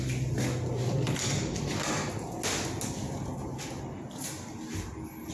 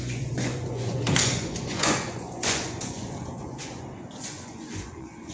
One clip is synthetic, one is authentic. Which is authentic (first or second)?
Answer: first